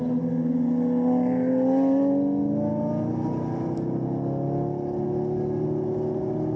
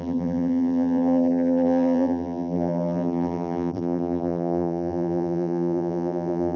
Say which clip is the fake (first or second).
second